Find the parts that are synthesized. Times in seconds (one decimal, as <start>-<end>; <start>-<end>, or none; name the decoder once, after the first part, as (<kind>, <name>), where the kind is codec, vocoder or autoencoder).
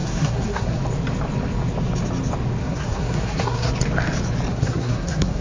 0.0-0.8 (codec, SNAC); 2.6-3.7; 4.5-5.4